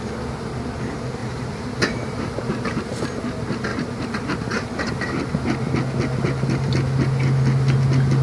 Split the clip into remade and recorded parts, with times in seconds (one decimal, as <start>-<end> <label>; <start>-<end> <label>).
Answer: 0.0-1.2 recorded; 1.2-2.8 remade; 2.8-3.7 recorded; 3.7-4.9 remade; 4.9-8.2 recorded